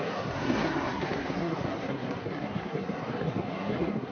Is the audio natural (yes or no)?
no